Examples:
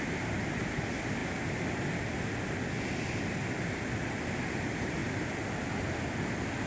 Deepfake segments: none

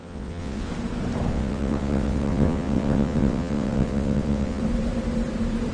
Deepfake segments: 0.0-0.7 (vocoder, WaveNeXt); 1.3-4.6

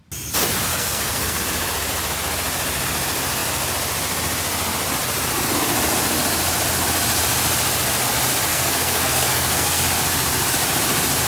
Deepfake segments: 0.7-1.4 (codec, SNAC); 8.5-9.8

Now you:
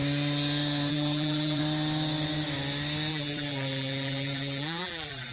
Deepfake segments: 0.9-1.6 (vocoder, BigVGAN v2); 3.1-5.3

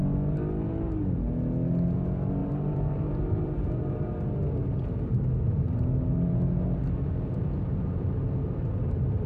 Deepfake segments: 2.4-4.1 (vocoder, BigVGAN v2)

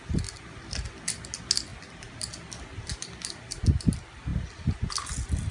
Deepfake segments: none

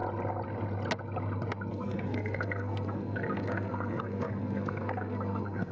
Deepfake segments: 1.7-5.7 (codec, SNAC)